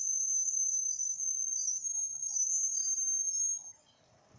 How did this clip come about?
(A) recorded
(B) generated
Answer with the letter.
A